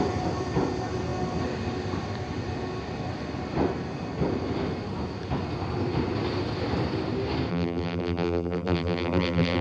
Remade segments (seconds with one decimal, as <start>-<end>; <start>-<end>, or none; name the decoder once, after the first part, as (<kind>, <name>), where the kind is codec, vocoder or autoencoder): 7.5-9.6 (vocoder, BigVGAN v2)